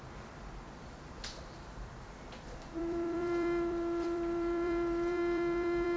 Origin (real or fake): fake